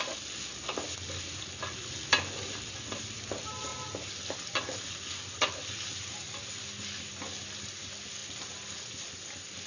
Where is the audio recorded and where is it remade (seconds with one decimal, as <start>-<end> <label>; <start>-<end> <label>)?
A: 0.0-9.7 recorded